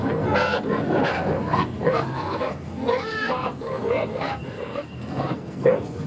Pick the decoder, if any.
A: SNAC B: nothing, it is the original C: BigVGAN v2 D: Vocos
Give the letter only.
A